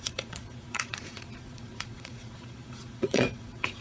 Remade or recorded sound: remade